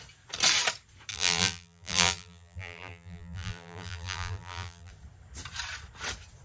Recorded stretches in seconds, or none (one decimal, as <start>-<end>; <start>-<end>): 0.0-1.1; 4.9-6.4